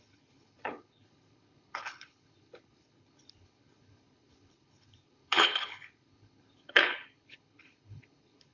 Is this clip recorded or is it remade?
remade